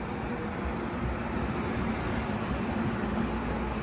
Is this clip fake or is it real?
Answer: real